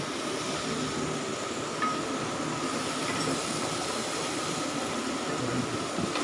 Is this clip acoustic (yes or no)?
no